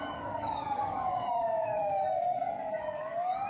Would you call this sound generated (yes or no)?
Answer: yes